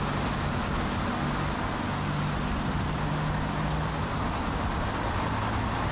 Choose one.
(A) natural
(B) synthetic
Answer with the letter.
A